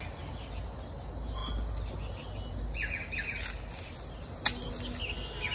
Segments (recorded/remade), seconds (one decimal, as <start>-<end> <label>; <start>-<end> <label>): 0.0-5.5 recorded